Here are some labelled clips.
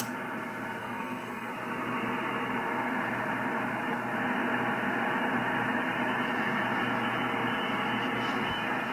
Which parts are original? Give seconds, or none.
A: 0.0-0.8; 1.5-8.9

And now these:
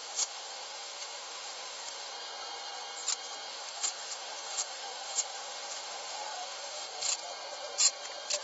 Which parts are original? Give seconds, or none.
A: 2.1-3.5; 7.1-8.4

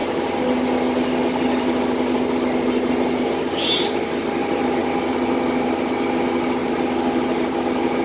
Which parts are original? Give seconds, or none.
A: 0.0-8.0

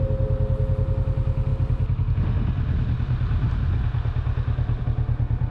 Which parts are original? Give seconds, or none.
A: 0.0-5.5

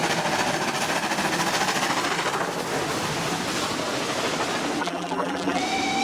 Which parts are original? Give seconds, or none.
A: 0.0-4.8; 5.6-6.0